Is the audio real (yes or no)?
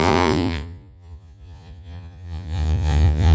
no